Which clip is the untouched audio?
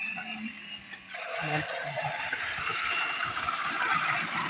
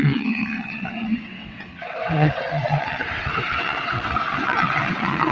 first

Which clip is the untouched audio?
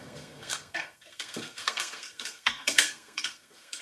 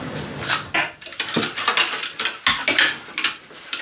second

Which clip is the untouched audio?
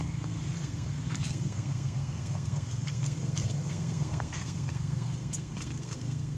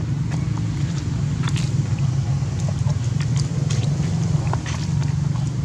second